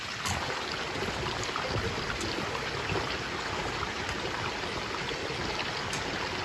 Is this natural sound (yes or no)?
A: yes